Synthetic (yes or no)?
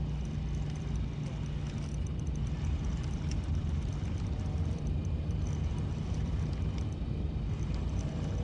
no